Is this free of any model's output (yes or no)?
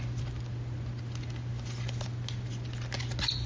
yes